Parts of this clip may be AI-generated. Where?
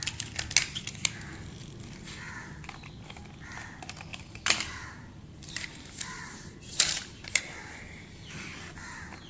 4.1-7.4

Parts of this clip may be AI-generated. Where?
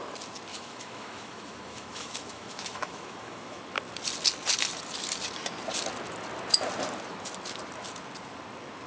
0.5-3.6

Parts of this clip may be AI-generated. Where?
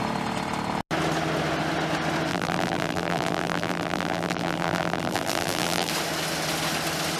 2.3-5.9